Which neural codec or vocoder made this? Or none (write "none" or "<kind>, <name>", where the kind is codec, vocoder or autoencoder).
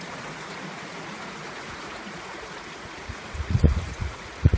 vocoder, Vocos